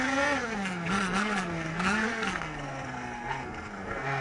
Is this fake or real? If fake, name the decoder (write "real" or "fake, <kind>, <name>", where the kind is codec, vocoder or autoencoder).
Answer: fake, codec, SNAC